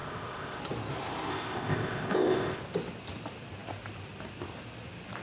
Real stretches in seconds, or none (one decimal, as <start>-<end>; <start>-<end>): 0.6-1.3; 2.6-5.2